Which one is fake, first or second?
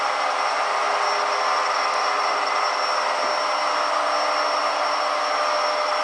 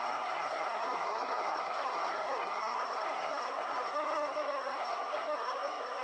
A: second